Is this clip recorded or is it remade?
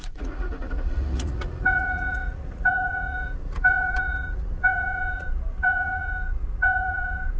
remade